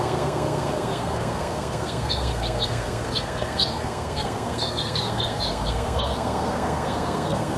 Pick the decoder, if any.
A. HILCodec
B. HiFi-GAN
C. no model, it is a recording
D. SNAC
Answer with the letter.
D